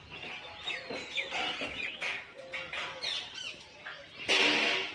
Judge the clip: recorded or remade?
recorded